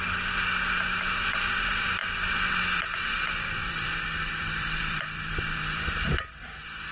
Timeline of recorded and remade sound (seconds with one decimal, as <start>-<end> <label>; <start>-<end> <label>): 0.0-2.0 recorded; 2.0-6.1 remade; 6.1-6.9 recorded